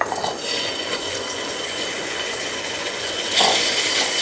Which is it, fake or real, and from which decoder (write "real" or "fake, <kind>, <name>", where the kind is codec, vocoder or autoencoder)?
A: fake, vocoder, Vocos